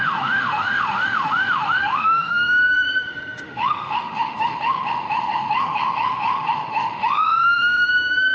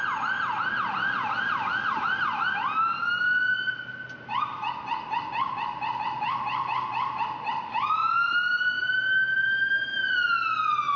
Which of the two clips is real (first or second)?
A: second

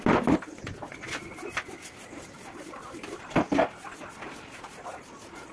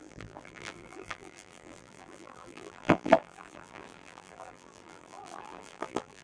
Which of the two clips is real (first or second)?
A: first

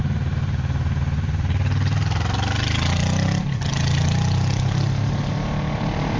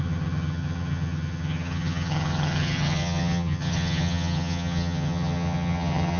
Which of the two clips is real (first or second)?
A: first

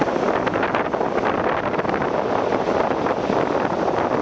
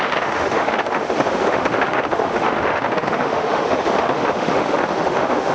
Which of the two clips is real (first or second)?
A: first